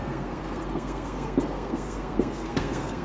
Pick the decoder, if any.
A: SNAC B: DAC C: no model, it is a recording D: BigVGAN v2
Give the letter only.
A